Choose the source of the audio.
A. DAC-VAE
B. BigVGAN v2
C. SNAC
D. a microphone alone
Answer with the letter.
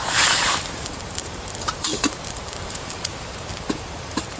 B